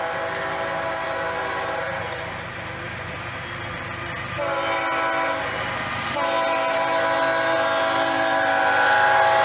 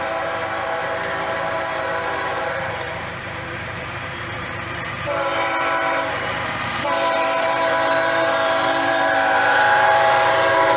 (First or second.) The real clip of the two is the first